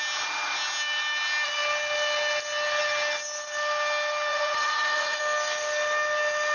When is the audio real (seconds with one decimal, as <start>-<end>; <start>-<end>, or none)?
0.0-4.3; 5.2-6.5